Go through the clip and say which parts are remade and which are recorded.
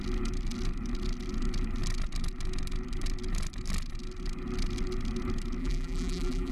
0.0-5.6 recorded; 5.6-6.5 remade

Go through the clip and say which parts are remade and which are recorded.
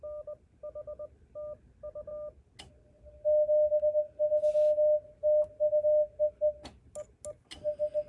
0.0-8.1 recorded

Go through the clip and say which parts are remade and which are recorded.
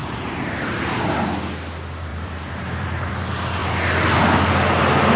0.0-1.3 remade; 1.3-2.1 recorded; 2.1-3.1 remade; 3.1-5.2 recorded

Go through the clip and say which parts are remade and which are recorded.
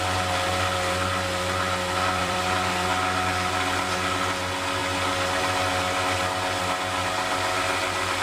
0.0-2.2 recorded; 2.2-2.7 remade; 2.7-8.2 recorded